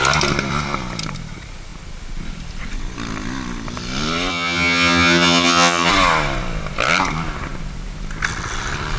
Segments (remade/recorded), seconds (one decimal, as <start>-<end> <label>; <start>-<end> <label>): 0.0-4.3 recorded; 4.3-5.9 remade; 5.9-9.0 recorded